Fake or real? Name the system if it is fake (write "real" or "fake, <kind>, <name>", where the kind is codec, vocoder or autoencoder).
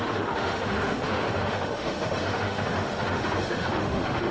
fake, autoencoder, DAC-VAE